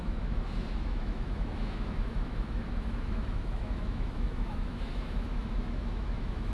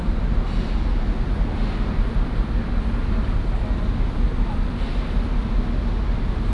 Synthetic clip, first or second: first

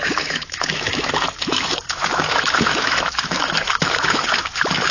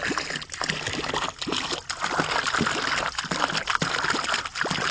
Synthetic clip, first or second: first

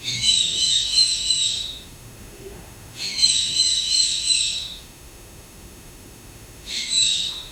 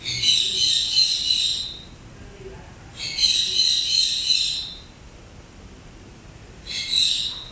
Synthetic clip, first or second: first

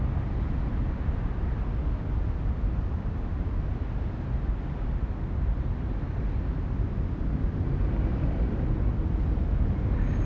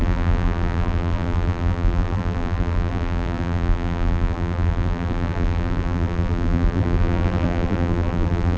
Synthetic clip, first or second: second